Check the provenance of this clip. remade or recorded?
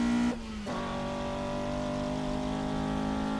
recorded